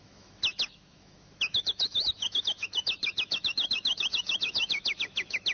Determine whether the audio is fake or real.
fake